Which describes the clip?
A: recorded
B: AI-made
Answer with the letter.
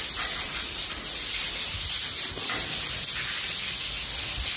A